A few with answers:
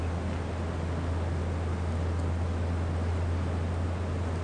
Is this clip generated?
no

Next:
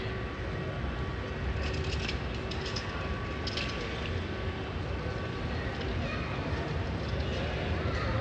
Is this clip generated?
no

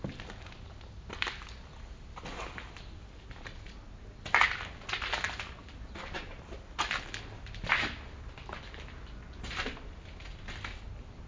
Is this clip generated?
no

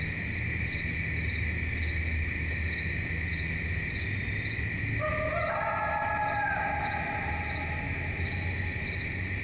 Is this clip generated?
no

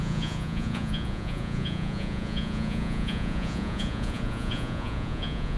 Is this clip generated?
yes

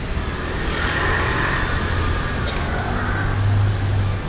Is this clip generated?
no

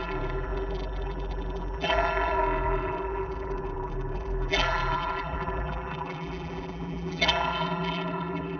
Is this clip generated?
yes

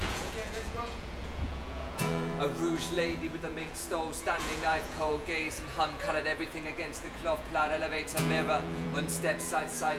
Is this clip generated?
yes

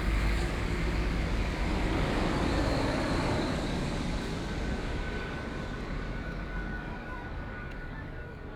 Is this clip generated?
yes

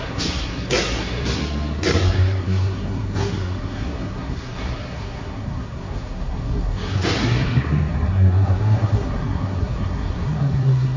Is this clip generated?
yes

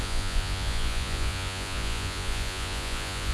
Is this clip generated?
yes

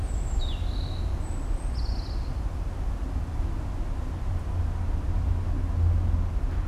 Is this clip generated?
no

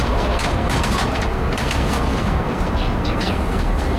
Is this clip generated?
yes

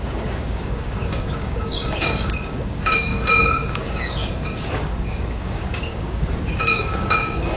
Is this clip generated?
yes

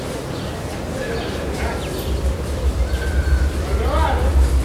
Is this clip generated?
no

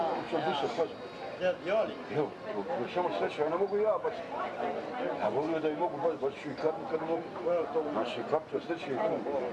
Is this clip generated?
no